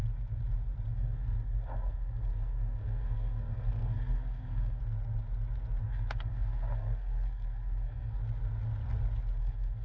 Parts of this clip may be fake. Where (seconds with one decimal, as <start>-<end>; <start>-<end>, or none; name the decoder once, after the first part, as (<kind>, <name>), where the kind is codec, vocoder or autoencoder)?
0.9-4.8 (codec, SNAC); 5.8-8.2; 9.4-9.8